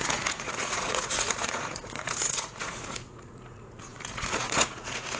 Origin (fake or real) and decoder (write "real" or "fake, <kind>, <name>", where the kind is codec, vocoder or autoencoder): fake, vocoder, Vocos